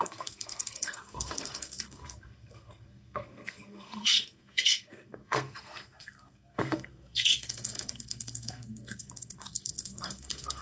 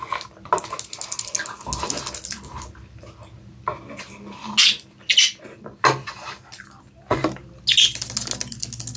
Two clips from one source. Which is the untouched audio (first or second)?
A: second